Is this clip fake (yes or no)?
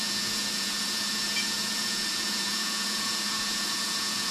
yes